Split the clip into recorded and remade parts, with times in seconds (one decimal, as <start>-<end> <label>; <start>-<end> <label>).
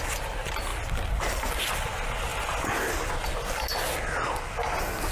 0.0-5.1 recorded